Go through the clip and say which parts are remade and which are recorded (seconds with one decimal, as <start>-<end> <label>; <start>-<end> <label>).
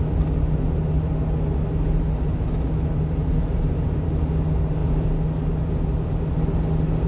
0.0-3.2 recorded; 3.2-4.1 remade; 4.1-7.1 recorded